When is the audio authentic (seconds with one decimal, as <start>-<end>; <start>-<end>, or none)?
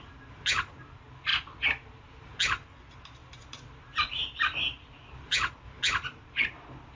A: 0.0-1.3; 2.0-3.2; 5.5-7.0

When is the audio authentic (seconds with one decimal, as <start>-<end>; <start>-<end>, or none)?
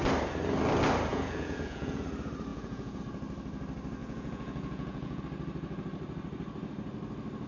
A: 0.0-1.1; 2.0-2.5; 3.0-4.0; 5.2-7.5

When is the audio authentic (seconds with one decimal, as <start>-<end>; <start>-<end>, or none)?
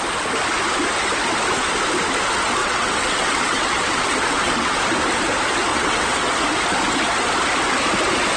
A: 0.0-2.6; 4.8-5.7; 6.3-8.4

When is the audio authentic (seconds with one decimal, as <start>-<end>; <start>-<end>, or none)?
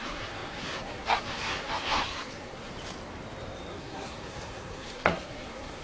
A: 2.7-3.7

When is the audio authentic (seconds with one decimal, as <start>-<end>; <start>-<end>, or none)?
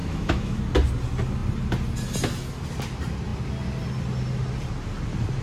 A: 0.6-5.4